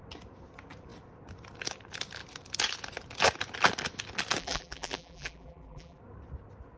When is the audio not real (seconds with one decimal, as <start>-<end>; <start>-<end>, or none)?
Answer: 4.4-6.0